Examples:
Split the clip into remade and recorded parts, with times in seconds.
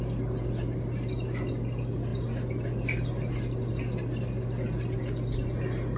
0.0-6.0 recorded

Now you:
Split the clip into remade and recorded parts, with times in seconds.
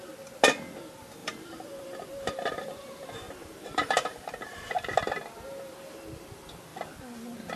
0.0-1.2 recorded; 1.2-4.6 remade; 4.6-7.6 recorded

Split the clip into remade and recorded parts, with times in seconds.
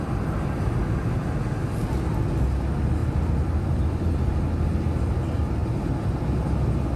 0.0-3.0 recorded; 3.0-4.3 remade; 4.3-7.0 recorded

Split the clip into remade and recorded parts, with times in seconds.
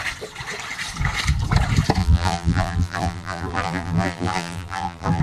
0.0-2.0 recorded; 2.0-5.2 remade